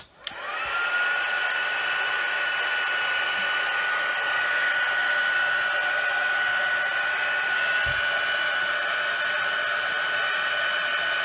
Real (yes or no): yes